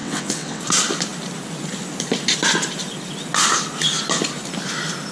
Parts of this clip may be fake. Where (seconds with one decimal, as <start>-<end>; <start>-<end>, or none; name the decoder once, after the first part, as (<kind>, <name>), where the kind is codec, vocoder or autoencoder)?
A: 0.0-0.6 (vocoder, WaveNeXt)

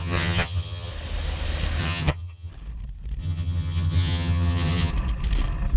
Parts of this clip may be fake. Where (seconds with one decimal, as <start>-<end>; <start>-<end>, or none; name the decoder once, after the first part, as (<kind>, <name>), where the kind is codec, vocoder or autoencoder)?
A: 0.0-0.9 (vocoder, HiFi-GAN); 1.8-2.5; 3.2-4.9

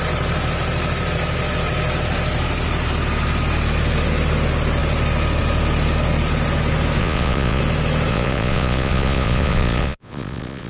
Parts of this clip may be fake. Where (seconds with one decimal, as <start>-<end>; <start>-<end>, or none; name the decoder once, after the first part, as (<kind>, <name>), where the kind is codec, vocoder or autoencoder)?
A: 7.0-7.6 (vocoder, Vocos); 8.1-10.7

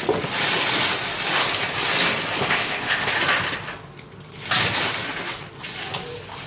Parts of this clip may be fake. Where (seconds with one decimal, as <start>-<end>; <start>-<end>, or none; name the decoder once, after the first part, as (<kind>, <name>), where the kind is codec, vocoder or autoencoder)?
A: 2.4-3.1 (codec, ZipCodec)

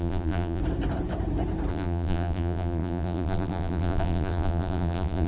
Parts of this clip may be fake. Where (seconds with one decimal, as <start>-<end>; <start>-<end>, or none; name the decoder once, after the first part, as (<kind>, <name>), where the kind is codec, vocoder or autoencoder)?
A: 0.0-0.6 (vocoder, BigVGAN v2); 1.7-5.3

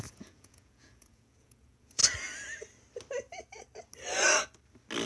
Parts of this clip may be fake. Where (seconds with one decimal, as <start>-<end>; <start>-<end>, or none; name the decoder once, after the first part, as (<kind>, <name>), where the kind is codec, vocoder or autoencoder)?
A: 0.0-2.0 (vocoder, Vocos)

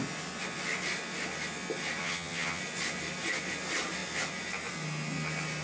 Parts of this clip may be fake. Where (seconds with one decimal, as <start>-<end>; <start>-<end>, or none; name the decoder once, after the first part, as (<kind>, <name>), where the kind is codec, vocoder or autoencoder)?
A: 2.0-2.6 (vocoder, HiFi-GAN)

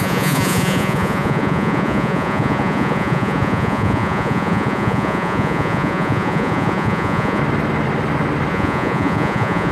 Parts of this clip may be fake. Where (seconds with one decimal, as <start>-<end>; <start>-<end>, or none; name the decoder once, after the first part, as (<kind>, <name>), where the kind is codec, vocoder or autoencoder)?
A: 0.0-7.4 (vocoder, Vocos); 8.5-9.7